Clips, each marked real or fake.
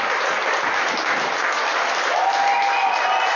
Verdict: real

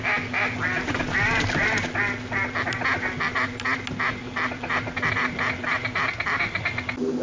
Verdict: real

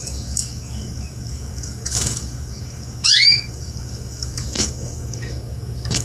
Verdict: fake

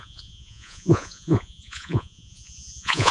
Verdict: fake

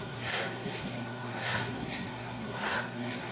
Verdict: fake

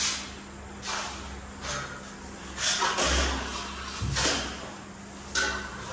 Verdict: real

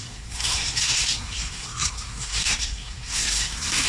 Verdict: fake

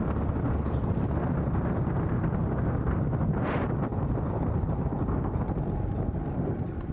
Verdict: real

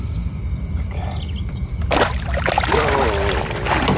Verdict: fake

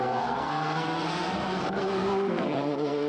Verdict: fake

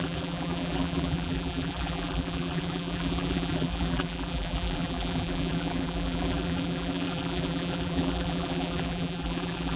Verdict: fake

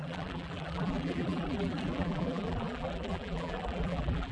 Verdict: fake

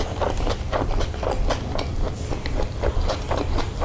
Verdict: real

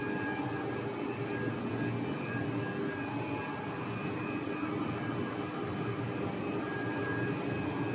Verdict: real